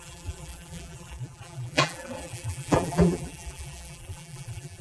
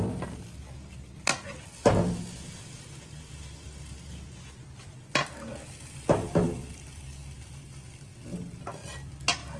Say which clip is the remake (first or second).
first